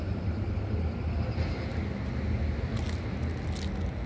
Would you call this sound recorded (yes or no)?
yes